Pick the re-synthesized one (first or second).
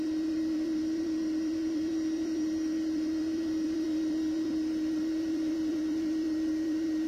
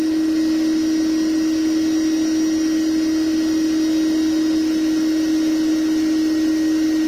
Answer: first